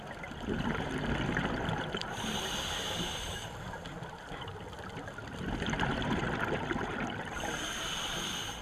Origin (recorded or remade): remade